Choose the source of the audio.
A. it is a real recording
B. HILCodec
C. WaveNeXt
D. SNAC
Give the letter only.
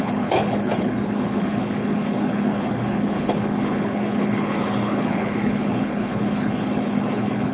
B